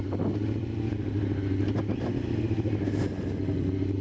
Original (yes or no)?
yes